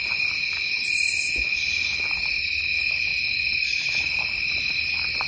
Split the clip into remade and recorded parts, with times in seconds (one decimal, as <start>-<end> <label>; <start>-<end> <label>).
0.0-5.3 recorded